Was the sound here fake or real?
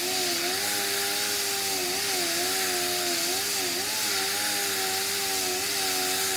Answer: real